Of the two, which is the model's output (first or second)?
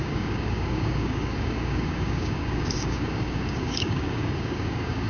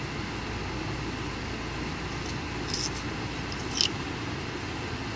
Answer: first